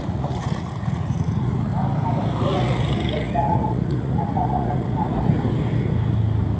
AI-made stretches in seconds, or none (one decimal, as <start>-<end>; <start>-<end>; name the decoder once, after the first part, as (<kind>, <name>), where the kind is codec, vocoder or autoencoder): 0.0-1.7 (vocoder, Vocos); 2.4-5.3